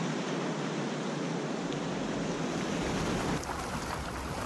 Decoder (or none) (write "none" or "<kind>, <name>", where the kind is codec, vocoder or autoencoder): none